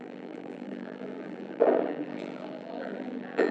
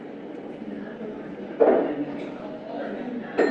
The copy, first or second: first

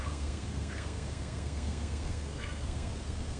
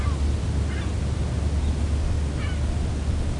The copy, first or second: first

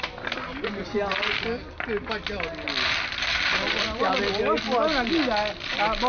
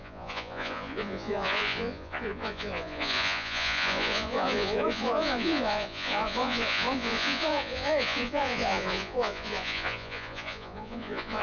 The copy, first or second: second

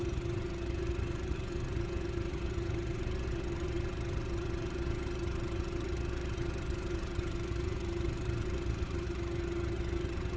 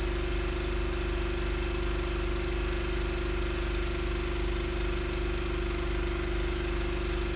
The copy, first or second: first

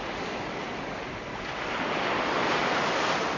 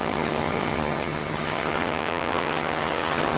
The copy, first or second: second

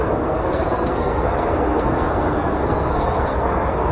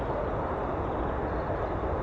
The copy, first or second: first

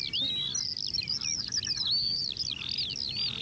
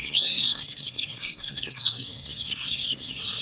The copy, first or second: second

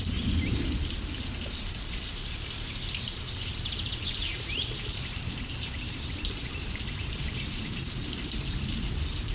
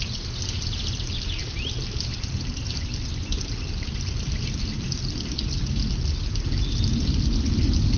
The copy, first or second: first